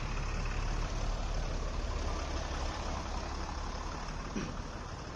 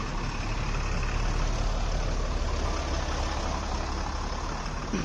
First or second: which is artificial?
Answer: first